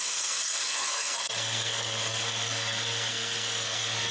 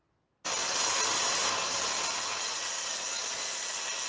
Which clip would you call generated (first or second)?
first